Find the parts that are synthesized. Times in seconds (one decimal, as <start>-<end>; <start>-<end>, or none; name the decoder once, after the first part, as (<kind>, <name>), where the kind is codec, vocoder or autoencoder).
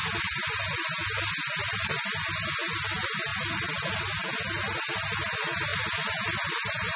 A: none